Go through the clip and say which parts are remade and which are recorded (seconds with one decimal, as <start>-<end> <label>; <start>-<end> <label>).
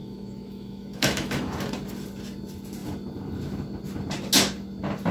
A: 0.0-1.5 remade; 1.5-5.1 recorded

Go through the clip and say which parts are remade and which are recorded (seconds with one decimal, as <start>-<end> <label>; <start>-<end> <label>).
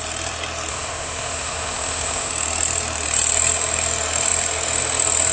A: 0.0-0.7 recorded; 0.7-2.3 remade; 2.3-5.3 recorded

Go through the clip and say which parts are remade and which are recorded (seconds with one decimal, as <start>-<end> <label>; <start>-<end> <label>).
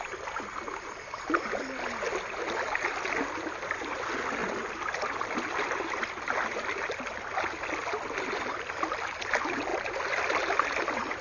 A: 0.0-11.2 recorded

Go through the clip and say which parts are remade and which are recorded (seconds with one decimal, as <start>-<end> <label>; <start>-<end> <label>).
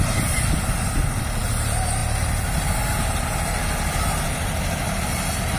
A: 0.0-5.6 recorded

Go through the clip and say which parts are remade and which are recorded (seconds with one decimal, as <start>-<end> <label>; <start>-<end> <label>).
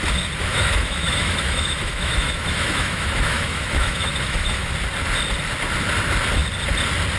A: 0.0-0.5 recorded; 0.5-4.7 remade; 4.7-7.2 recorded